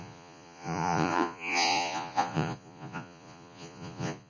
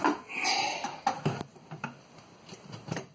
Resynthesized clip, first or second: first